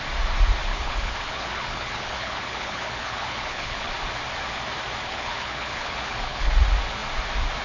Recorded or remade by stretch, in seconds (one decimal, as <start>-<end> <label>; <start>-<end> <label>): 0.0-0.7 recorded; 0.7-3.9 remade; 3.9-5.0 recorded; 5.0-6.5 remade; 6.5-7.6 recorded